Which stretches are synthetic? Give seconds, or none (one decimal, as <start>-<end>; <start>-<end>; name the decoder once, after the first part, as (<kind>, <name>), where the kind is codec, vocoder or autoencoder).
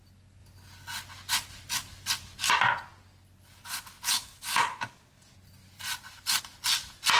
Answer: 5.6-6.4 (vocoder, BigVGAN v2)